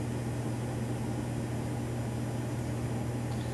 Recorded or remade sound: recorded